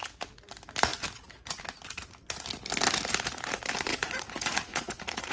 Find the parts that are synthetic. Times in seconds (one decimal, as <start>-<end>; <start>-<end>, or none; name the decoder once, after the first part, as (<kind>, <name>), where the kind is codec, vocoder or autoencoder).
3.9-5.3 (vocoder, Vocos)